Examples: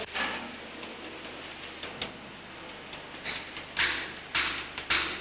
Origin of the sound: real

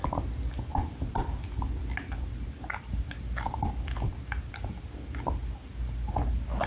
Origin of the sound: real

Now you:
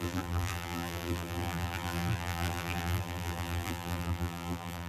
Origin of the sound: fake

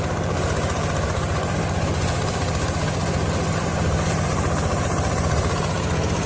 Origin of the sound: real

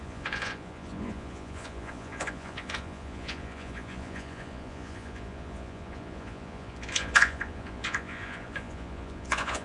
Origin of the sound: fake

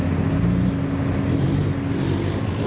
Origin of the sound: real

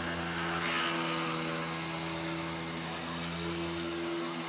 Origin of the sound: real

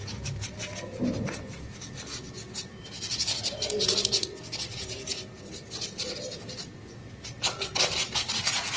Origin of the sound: real